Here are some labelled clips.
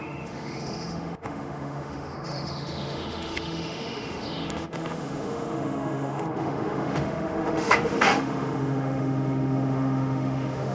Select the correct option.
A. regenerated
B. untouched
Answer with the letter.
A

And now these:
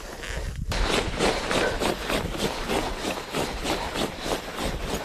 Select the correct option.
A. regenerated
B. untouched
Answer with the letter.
B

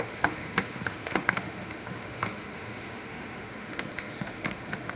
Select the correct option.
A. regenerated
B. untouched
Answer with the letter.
A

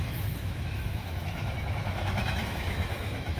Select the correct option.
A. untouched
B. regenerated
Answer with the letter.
B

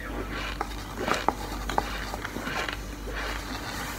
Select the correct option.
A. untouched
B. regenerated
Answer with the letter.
A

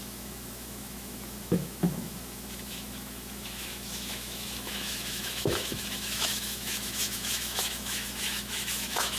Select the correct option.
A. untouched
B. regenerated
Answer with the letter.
B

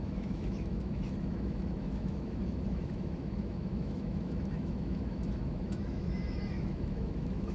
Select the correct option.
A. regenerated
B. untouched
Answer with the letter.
A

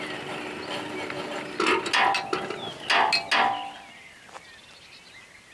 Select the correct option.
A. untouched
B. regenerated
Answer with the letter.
A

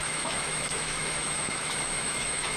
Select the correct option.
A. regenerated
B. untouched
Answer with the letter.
A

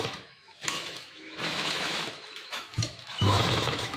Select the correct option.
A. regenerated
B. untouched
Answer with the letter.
A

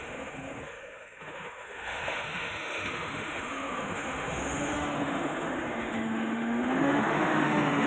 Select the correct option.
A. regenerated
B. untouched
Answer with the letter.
A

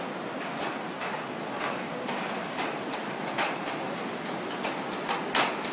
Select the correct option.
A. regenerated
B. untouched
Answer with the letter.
B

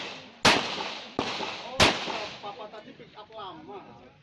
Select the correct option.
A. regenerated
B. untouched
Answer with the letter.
B